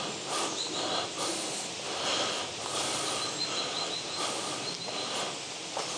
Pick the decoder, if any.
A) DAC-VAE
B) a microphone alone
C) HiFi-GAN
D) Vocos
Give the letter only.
B